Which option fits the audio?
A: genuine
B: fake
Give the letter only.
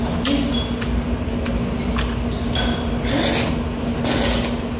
A